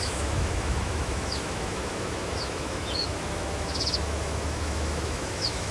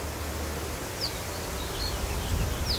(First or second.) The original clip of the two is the second